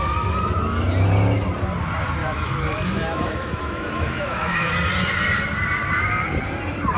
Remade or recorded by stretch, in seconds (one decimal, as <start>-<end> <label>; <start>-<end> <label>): 0.0-2.2 recorded; 2.2-4.7 remade; 4.7-7.0 recorded